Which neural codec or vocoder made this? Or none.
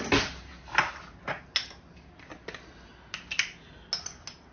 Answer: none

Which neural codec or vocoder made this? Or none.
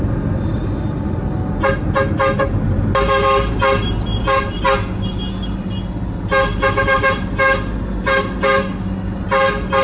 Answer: none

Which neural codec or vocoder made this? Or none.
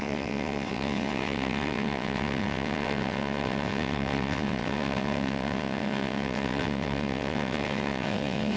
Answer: vocoder, WaveNeXt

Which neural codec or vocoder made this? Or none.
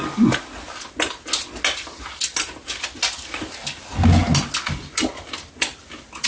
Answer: none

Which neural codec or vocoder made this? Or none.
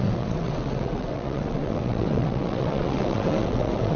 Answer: vocoder, WaveNeXt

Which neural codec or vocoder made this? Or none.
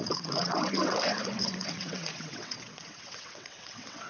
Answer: vocoder, WaveNeXt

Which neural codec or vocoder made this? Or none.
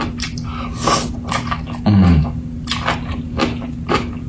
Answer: none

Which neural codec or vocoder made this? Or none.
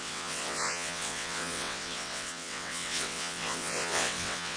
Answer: vocoder, WaveNeXt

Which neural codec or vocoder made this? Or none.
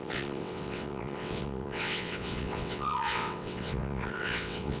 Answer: vocoder, WaveNeXt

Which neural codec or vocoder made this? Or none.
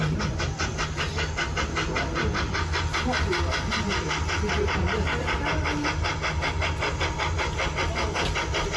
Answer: none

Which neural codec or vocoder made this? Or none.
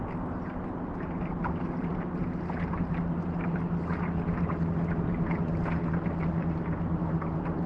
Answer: none